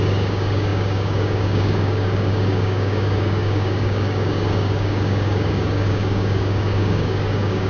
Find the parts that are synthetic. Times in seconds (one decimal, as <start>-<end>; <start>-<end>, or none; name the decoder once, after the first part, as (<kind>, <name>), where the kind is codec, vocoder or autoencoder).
0.0-7.7 (codec, DAC)